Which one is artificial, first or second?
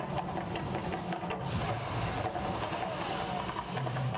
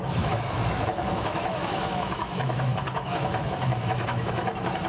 second